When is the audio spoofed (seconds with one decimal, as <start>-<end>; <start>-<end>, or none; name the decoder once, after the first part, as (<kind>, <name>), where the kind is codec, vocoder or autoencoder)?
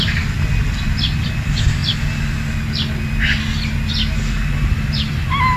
none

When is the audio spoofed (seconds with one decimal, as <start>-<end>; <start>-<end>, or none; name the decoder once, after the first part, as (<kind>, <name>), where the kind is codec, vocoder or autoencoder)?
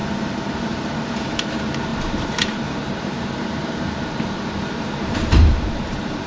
0.5-6.3 (vocoder, BigVGAN v2)